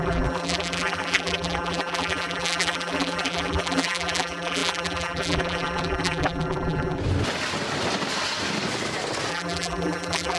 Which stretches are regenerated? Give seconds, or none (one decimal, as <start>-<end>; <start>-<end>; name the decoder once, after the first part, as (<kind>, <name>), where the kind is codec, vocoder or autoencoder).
0.0-7.0 (vocoder, BigVGAN v2); 9.3-10.4